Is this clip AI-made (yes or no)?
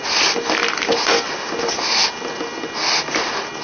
no